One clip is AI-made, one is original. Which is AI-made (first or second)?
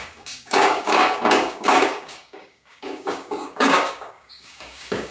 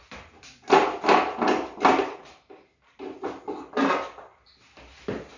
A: first